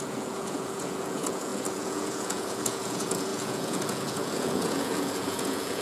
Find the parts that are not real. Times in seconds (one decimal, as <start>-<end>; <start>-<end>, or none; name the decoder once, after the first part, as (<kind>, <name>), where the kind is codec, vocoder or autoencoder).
0.0-5.8 (vocoder, Vocos)

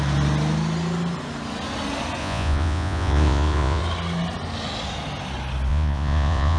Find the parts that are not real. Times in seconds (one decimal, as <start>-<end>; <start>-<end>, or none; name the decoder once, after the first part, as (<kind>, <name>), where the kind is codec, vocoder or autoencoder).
2.2-3.8 (vocoder, Vocos); 5.7-6.6

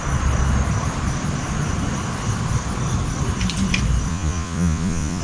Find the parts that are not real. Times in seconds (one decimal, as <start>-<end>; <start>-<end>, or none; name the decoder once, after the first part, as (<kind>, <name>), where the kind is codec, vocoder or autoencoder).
4.1-5.2 (vocoder, Vocos)

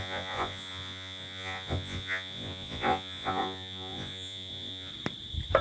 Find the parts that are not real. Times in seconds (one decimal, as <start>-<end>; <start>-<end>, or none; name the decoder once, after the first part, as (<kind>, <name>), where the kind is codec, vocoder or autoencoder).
0.0-4.9 (vocoder, Vocos)

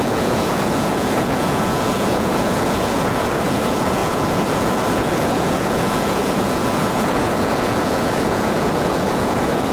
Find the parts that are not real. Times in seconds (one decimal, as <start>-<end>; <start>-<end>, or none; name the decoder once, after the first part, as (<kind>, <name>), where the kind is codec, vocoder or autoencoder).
0.0-9.7 (vocoder, Vocos)

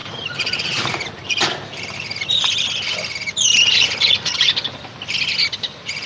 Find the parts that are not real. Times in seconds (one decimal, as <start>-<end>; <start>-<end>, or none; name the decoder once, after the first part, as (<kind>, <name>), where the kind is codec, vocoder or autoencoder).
none

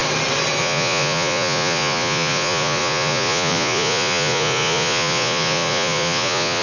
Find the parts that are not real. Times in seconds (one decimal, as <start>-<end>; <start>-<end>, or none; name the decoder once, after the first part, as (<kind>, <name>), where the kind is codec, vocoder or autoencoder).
0.6-6.6 (vocoder, Vocos)